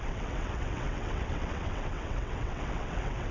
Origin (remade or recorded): remade